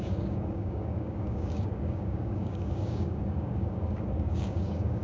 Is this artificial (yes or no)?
yes